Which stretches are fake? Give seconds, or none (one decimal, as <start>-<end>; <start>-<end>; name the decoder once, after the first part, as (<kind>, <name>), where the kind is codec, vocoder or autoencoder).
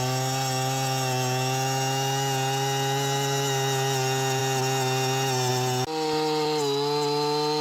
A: none